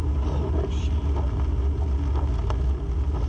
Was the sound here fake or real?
real